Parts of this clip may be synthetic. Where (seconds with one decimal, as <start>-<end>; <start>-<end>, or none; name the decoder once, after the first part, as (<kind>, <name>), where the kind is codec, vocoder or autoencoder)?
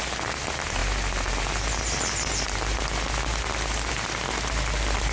none